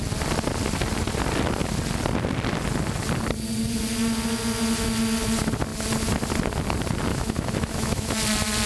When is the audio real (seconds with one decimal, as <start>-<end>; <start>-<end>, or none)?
0.0-7.1; 8.1-8.7